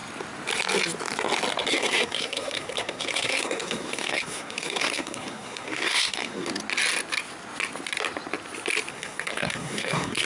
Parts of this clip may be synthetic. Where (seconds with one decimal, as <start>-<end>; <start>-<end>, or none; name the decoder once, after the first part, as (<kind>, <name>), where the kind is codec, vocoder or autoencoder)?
1.7-6.5 (codec, SNAC); 8.9-10.3